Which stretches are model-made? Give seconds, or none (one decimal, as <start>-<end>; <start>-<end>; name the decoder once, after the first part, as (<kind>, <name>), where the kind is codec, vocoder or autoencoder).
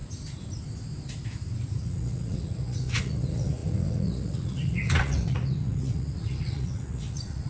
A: 1.8-7.5 (vocoder, Vocos)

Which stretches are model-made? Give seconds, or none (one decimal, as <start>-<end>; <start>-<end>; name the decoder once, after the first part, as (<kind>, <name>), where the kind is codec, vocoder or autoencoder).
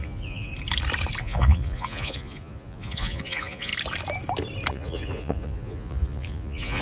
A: 0.0-0.5 (vocoder, Vocos); 1.2-3.7; 4.7-6.8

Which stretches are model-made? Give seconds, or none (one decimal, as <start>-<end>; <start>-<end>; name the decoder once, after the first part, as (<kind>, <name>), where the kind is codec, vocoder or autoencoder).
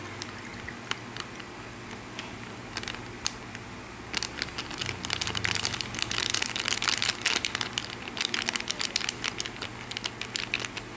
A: none